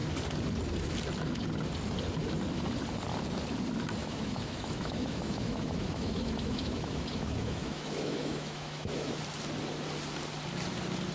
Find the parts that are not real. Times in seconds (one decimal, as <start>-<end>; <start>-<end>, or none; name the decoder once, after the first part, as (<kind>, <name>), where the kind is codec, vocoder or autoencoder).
4.0-9.2 (autoencoder, DAC-VAE)